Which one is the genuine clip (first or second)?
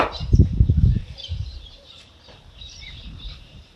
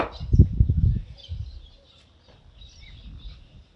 second